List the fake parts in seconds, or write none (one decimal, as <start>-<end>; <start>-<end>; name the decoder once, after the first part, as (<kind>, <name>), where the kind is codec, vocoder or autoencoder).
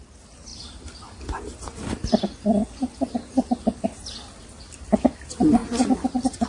none